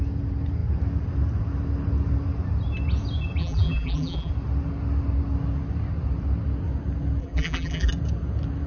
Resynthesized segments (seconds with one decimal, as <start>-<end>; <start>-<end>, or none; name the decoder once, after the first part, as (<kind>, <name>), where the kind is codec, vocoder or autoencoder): 3.4-4.3 (vocoder, BigVGAN v2); 7.2-7.9